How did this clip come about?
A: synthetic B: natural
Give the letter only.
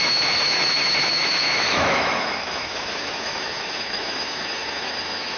A